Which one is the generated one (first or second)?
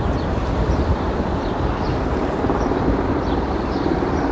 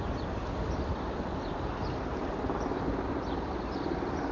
first